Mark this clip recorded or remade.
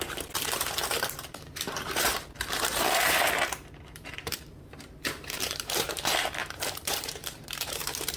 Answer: remade